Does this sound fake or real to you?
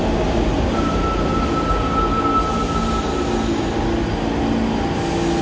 real